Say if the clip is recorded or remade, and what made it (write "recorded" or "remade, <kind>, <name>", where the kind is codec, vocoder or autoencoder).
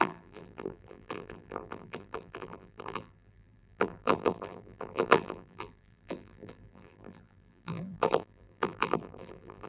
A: remade, vocoder, BigVGAN v2